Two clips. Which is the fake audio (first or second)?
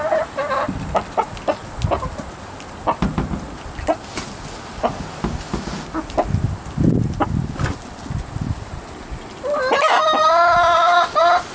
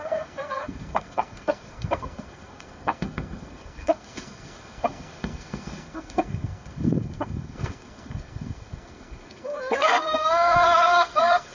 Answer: second